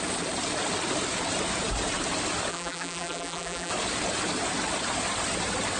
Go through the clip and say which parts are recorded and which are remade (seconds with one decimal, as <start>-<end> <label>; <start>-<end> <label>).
0.0-2.5 recorded; 2.5-3.7 remade; 3.7-5.8 recorded